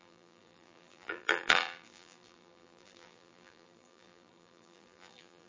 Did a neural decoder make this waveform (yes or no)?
yes